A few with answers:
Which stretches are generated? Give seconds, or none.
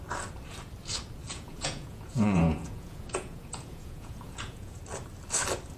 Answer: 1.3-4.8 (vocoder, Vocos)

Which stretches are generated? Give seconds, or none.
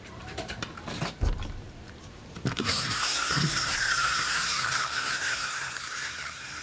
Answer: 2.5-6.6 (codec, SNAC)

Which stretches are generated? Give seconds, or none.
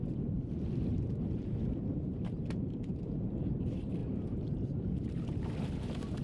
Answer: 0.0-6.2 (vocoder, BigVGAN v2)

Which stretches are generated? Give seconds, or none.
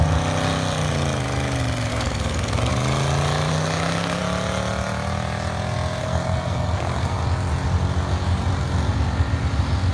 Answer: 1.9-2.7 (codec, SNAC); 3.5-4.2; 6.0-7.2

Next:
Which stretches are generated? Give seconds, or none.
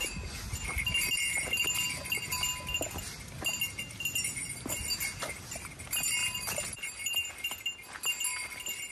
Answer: 6.2-7.3 (vocoder, BigVGAN v2)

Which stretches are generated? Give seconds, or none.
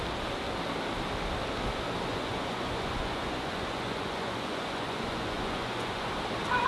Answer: 2.1-6.1 (vocoder, Vocos)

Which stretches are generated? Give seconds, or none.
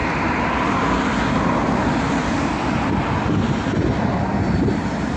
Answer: none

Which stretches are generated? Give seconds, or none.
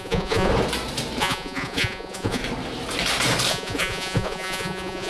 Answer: 0.0-0.5 (vocoder, Vocos); 1.2-2.4; 3.5-5.1